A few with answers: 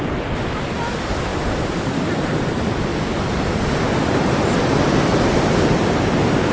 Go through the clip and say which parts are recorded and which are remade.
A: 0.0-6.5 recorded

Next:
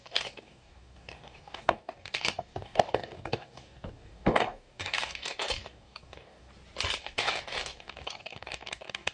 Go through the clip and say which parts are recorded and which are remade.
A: 0.0-6.5 remade; 6.5-7.0 recorded; 7.0-9.1 remade